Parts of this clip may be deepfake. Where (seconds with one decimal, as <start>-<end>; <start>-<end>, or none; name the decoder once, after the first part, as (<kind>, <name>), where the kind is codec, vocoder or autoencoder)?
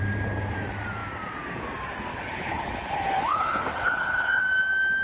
2.1-4.4 (codec, HILCodec)